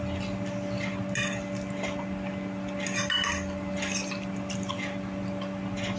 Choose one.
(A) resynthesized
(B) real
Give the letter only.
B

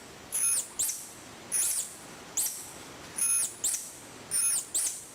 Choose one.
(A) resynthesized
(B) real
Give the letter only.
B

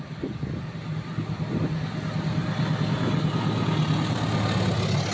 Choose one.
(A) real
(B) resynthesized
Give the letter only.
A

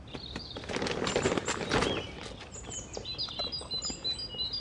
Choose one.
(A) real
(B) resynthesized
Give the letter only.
A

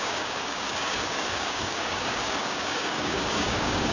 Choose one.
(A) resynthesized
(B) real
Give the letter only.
A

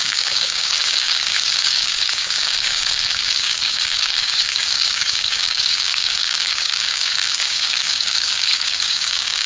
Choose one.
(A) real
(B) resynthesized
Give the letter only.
B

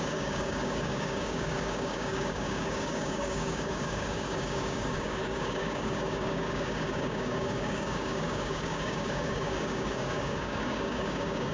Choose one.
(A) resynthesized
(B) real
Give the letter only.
A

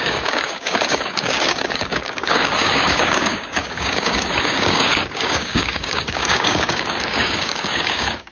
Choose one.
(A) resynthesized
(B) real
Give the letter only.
A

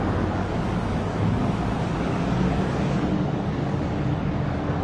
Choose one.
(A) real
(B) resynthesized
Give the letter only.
B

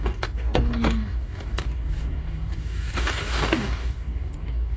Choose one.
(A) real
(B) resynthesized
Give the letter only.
B